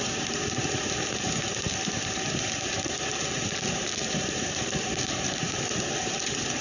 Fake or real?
fake